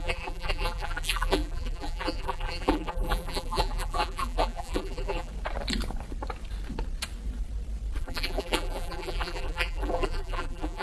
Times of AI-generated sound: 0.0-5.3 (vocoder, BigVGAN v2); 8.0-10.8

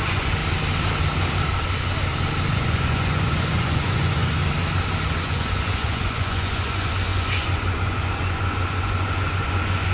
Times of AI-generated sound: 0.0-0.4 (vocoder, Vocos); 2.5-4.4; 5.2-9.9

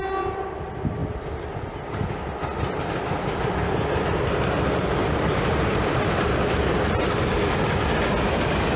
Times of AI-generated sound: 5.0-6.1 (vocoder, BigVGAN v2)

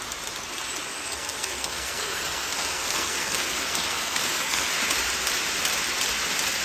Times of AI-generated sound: 0.9-4.7 (codec, SNAC)

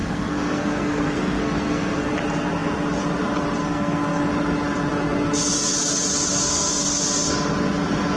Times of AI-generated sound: 0.0-2.1 (codec, SNAC); 3.6-4.2; 6.3-7.0

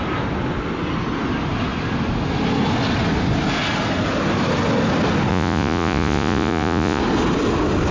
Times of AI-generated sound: 5.3-7.0 (vocoder, Vocos)